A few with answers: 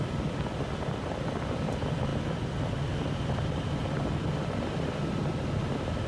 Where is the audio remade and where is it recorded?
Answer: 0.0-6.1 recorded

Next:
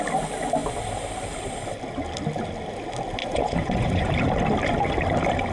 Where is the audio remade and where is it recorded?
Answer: 0.0-3.2 recorded; 3.2-4.1 remade; 4.1-5.5 recorded